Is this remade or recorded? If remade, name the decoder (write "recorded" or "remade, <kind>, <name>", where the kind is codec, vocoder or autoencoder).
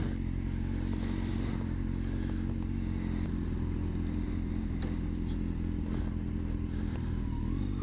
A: recorded